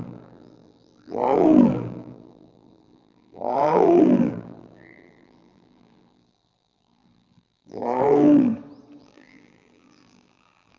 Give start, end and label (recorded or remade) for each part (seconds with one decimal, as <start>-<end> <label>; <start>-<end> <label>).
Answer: 0.0-8.5 remade; 8.5-9.0 recorded; 9.0-10.8 remade